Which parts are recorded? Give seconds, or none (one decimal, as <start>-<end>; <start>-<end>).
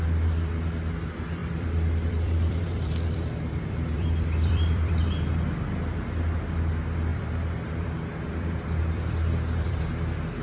0.0-1.4; 4.9-7.1; 9.9-10.4